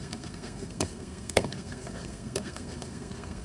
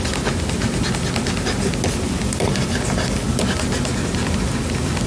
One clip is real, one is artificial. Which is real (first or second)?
second